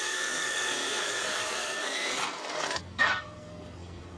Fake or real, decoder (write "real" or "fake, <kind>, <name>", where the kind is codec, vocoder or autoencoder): fake, codec, SNAC